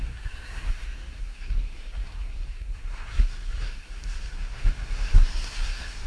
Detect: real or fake fake